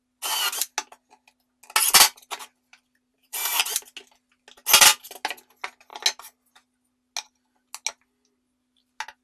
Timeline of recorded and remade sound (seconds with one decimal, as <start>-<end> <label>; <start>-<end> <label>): 0.0-3.1 recorded; 3.1-3.6 remade; 3.6-9.2 recorded